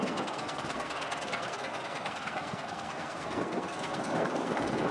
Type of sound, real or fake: fake